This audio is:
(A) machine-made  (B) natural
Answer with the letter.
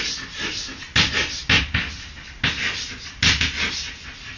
B